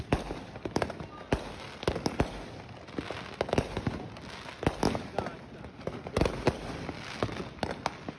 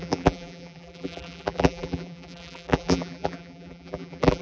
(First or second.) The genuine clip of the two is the first